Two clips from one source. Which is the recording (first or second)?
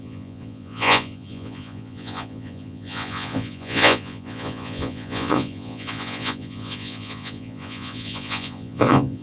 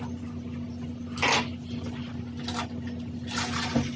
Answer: second